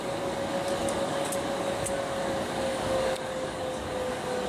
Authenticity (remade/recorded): remade